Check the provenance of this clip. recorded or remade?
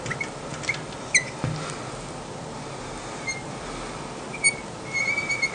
recorded